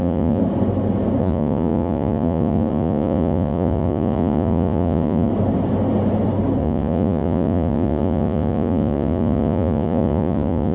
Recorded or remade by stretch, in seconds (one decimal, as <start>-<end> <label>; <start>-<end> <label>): 0.0-0.4 remade; 0.4-1.2 recorded; 1.2-5.3 remade; 5.3-6.6 recorded; 6.6-10.7 remade